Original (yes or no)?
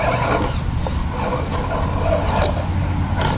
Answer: yes